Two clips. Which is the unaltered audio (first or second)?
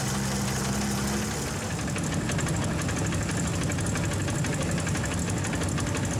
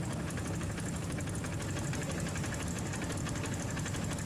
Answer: first